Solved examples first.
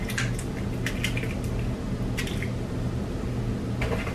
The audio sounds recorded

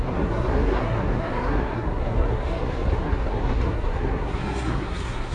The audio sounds remade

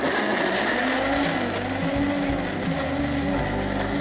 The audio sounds recorded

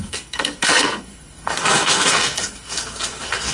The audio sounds remade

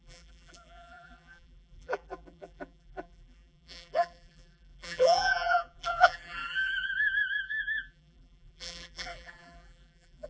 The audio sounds remade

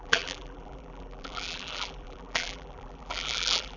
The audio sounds remade